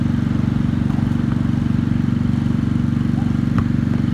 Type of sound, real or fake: real